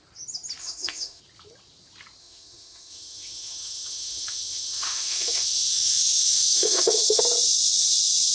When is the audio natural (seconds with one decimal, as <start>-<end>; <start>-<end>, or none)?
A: 0.0-0.6; 1.2-2.2; 7.2-8.3